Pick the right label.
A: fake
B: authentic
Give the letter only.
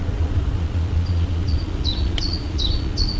A